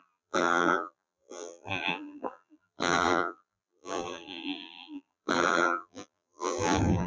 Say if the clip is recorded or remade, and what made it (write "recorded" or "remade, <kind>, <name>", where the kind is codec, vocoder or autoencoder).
remade, vocoder, BigVGAN v2